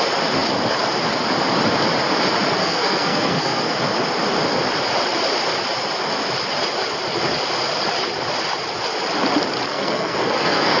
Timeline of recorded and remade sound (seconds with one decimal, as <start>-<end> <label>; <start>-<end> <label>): 0.0-2.6 recorded; 2.6-3.7 remade; 3.7-9.7 recorded; 9.7-10.8 remade

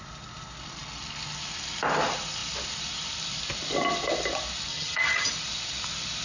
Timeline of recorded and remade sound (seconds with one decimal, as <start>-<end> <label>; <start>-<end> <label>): 0.0-4.7 recorded; 4.7-5.3 remade; 5.3-6.2 recorded

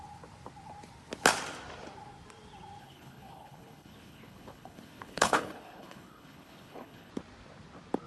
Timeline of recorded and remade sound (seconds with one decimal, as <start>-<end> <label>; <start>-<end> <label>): 0.0-2.8 recorded; 2.8-7.1 remade; 7.1-8.1 recorded

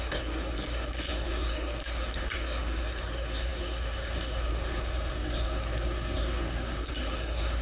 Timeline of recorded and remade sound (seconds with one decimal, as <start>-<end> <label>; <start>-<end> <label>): 0.0-7.6 remade